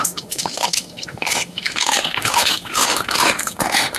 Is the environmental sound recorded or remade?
remade